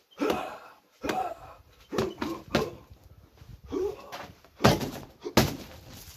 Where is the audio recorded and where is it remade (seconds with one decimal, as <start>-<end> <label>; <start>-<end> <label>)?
0.0-3.5 recorded; 3.5-5.3 remade; 5.3-6.2 recorded